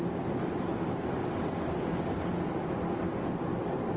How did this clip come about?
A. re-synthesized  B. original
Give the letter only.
B